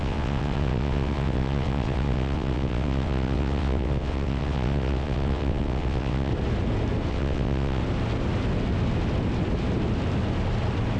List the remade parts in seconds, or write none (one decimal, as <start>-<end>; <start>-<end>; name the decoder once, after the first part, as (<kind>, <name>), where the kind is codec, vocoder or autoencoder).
0.0-6.3 (vocoder, WaveNeXt); 7.1-7.8